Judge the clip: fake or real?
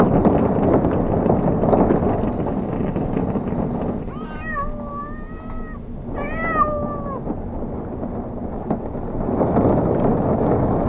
real